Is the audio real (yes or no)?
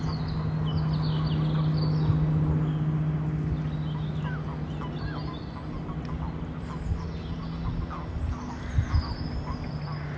yes